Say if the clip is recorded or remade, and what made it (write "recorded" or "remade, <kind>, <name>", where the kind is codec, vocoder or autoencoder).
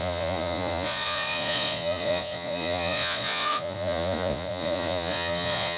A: remade, vocoder, Vocos